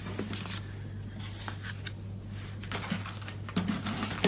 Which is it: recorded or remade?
recorded